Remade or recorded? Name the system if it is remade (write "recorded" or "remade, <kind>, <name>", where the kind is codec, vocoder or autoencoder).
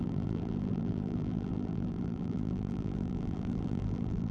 remade, vocoder, BigVGAN v2